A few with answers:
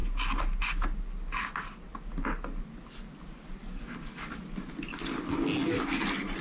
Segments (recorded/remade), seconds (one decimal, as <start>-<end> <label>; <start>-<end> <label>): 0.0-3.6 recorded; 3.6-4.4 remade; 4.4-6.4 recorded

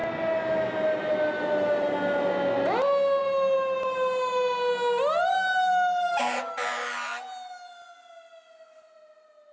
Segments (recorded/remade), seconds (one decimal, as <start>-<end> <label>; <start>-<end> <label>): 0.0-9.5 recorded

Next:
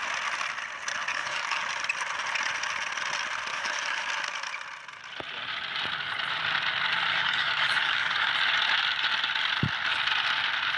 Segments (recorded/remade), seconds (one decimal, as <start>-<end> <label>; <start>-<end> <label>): 0.0-1.1 recorded; 1.1-1.6 remade; 1.6-3.5 recorded; 3.5-4.1 remade; 4.1-7.1 recorded; 7.1-8.3 remade; 8.3-10.8 recorded